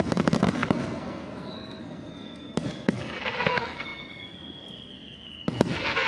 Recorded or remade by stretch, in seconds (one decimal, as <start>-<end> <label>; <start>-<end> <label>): 0.0-6.1 remade

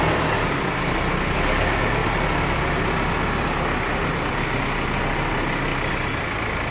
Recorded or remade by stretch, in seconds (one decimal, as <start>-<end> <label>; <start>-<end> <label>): 0.0-6.7 recorded

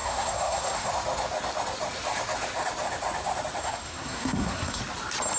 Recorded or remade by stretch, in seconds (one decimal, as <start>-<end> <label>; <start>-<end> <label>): 0.0-0.9 remade; 0.9-3.6 recorded; 3.6-4.8 remade; 4.8-5.4 recorded

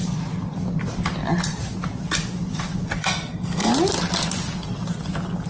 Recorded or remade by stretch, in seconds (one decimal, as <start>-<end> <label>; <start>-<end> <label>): 0.0-3.0 recorded; 3.0-3.7 remade; 3.7-5.5 recorded

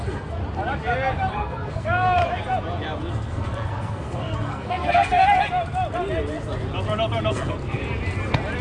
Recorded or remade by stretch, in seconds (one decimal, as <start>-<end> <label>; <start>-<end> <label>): 0.0-0.4 remade; 0.4-1.3 recorded; 1.3-2.2 remade; 2.2-3.1 recorded; 3.1-5.2 remade; 5.2-7.3 recorded; 7.3-7.8 remade; 7.8-8.6 recorded

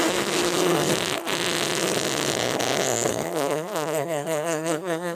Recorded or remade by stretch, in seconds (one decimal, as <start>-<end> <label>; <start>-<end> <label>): 0.0-0.9 remade; 0.9-3.1 recorded; 3.1-5.1 remade